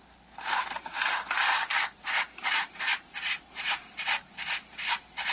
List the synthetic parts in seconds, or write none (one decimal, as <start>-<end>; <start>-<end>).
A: 1.7-5.3